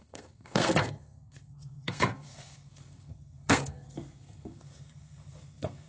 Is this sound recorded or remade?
remade